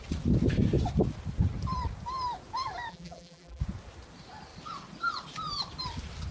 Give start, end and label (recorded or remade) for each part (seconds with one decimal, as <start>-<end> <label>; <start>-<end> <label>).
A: 0.0-2.9 recorded; 2.9-3.6 remade; 3.6-6.3 recorded